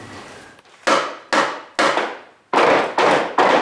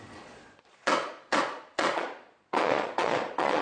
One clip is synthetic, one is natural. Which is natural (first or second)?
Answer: first